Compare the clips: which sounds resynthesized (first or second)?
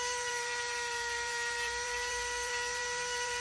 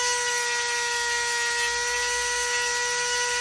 first